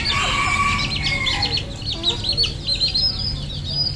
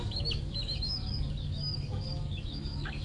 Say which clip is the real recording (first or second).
first